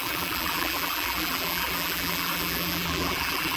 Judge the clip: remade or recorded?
remade